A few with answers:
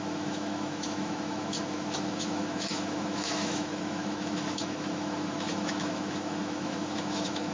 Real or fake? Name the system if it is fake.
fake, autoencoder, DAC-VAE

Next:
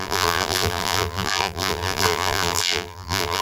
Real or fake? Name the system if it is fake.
fake, vocoder, BigVGAN v2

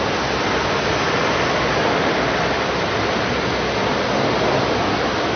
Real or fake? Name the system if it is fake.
real